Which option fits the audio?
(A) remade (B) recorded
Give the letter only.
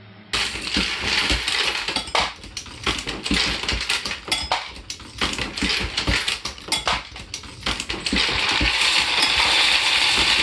B